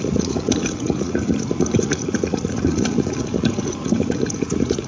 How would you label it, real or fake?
fake